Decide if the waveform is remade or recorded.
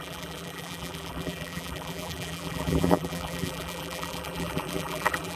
remade